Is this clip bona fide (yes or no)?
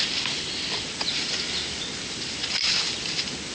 yes